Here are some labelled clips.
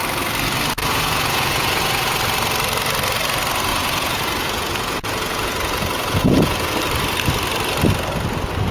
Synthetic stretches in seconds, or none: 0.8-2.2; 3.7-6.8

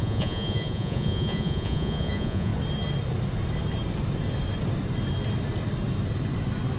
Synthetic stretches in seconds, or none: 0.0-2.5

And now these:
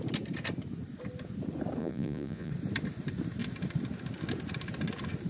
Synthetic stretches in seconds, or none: 1.8-2.5

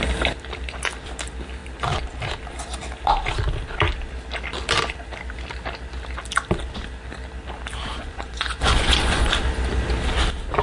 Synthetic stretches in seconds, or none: 7.9-9.3

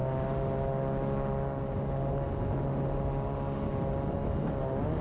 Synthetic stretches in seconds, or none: none

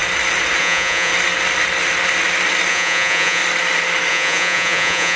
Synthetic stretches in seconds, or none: 0.6-1.1; 2.7-3.4; 4.1-5.2